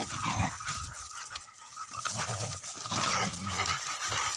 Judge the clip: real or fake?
real